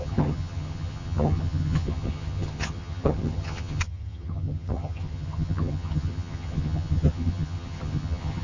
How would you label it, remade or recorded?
remade